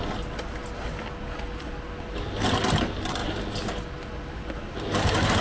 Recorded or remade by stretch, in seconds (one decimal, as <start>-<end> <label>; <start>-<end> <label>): 0.0-5.4 recorded